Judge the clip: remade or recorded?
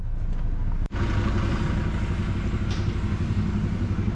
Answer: recorded